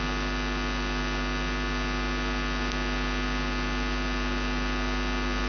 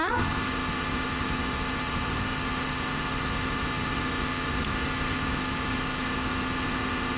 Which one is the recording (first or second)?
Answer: first